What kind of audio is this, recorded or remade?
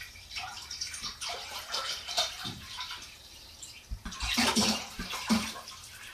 remade